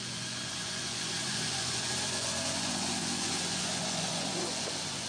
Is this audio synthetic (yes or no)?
yes